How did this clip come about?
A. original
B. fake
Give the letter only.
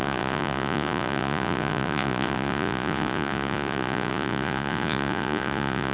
B